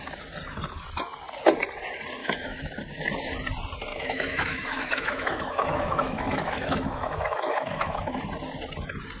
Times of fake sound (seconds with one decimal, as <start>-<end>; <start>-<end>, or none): 2.2-2.7; 3.9-8.0